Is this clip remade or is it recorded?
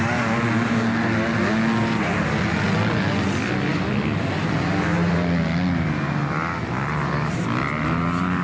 recorded